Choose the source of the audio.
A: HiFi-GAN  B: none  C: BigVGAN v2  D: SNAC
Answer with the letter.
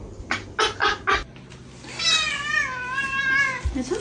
B